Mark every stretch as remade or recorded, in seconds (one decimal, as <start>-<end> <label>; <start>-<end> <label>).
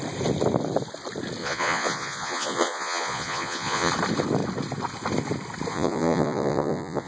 0.0-1.4 recorded; 1.4-3.9 remade; 3.9-5.7 recorded; 5.7-7.1 remade